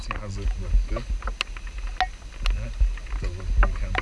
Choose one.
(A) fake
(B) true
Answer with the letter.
B